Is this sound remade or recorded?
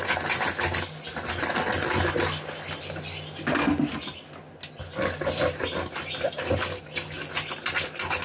recorded